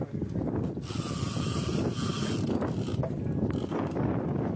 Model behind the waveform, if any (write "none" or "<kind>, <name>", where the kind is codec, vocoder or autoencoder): none